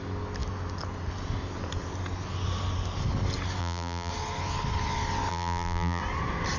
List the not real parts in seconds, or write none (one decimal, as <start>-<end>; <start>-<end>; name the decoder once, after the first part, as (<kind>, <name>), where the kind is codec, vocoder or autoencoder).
3.6-4.1 (vocoder, BigVGAN v2); 5.3-6.0